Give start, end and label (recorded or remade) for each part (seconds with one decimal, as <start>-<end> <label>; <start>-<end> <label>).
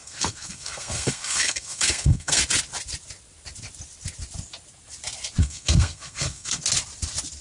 0.0-2.4 remade; 2.4-5.4 recorded; 5.4-6.6 remade; 6.6-7.4 recorded